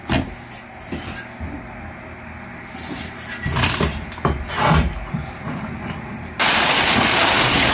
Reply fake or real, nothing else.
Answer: real